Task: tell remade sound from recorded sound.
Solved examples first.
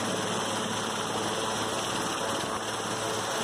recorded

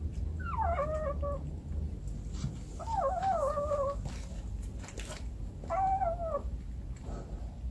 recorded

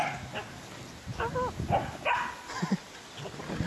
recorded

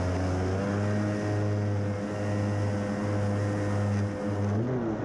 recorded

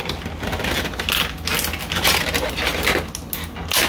recorded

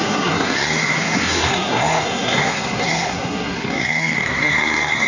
remade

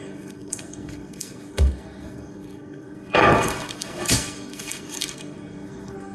remade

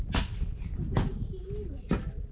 recorded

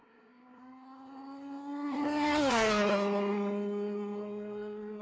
remade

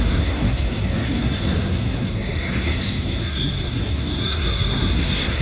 remade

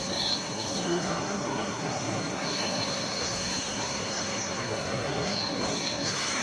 remade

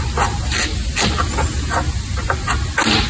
recorded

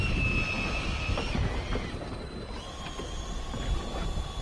recorded